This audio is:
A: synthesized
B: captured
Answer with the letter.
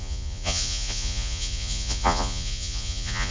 A